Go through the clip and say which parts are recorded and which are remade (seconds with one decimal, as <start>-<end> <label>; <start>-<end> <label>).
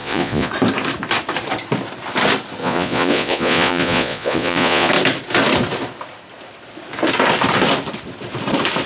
0.0-0.5 remade; 0.5-2.6 recorded; 2.6-4.9 remade; 4.9-8.9 recorded